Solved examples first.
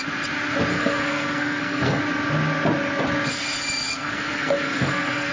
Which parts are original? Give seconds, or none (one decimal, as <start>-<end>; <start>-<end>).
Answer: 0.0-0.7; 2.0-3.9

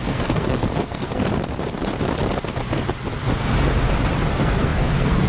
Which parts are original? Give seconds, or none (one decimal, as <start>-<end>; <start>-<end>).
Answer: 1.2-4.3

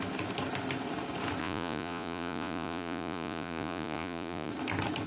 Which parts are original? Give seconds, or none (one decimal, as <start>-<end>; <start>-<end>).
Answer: 0.0-1.4; 4.5-5.1

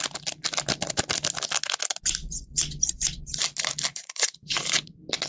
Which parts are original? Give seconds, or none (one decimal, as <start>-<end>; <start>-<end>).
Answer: 0.0-3.9; 4.6-5.3

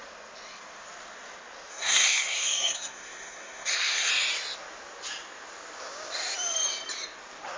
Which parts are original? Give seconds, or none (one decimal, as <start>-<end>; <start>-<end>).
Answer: 0.0-1.7; 4.1-7.6

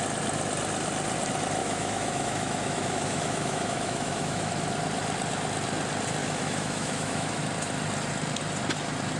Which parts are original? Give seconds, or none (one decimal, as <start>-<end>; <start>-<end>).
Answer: 0.0-1.6; 4.5-6.2; 7.4-9.2

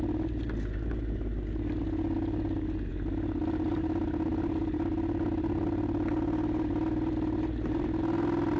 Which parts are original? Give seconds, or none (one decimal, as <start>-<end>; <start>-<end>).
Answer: 0.0-8.6